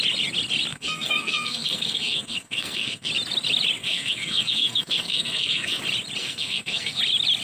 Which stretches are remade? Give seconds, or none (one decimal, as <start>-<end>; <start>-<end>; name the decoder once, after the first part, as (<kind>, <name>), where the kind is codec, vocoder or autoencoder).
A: 0.7-3.1 (codec, SNAC); 3.8-5.8; 6.2-7.0